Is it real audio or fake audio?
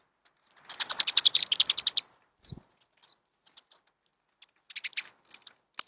real